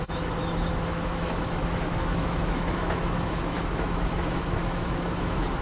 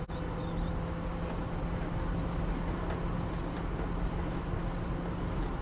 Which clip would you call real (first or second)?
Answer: second